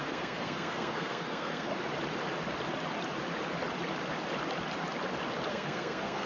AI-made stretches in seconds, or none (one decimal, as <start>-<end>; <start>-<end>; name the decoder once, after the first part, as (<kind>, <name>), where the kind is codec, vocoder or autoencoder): 0.0-1.7 (codec, SNAC); 5.5-6.3